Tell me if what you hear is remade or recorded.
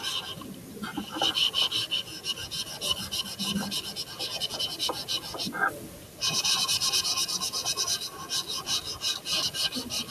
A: recorded